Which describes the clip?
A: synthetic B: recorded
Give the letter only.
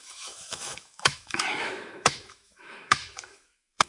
A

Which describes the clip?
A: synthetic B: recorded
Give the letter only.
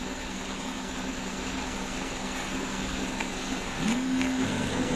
A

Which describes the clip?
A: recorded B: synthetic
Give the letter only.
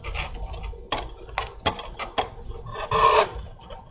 A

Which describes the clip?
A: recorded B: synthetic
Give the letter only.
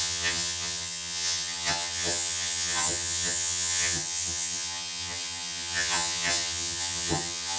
B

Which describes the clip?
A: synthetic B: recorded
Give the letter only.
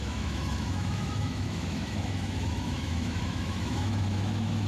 A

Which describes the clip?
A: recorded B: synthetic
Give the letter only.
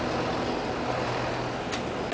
A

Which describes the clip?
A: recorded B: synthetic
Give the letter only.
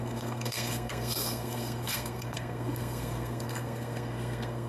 B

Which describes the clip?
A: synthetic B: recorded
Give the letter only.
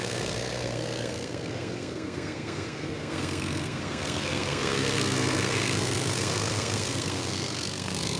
A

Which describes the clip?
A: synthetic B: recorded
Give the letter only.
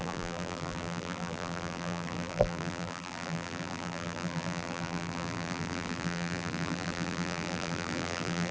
A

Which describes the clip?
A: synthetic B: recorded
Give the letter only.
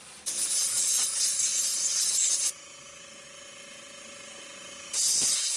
B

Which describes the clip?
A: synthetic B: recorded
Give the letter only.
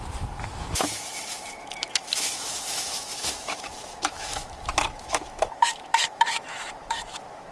A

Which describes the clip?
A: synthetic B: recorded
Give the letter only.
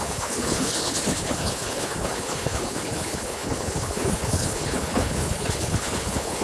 A